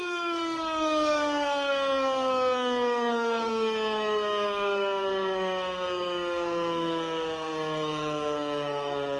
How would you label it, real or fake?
fake